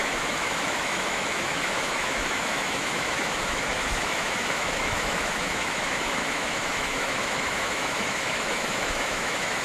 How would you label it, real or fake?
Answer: fake